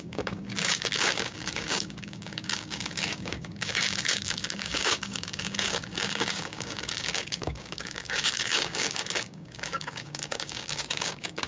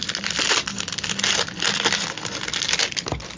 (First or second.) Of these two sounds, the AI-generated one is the first